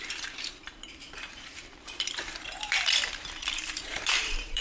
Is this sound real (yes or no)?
no